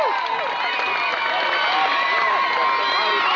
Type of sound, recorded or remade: recorded